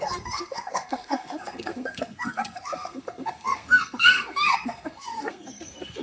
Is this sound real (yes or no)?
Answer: no